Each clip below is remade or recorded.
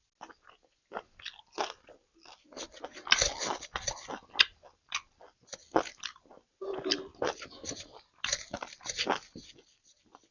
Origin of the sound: recorded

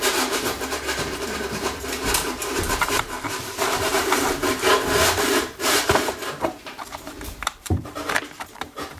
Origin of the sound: remade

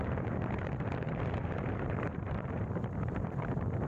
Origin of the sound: remade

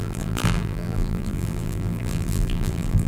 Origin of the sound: remade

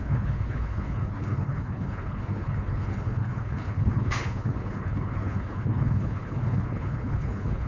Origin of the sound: remade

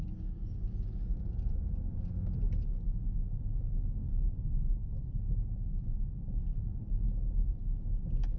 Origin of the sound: recorded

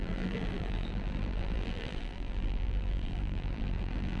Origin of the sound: remade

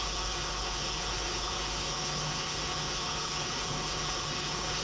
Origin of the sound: remade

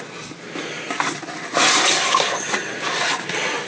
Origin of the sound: recorded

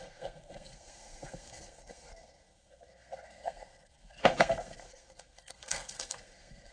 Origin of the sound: remade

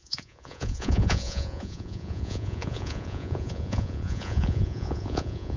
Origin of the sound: remade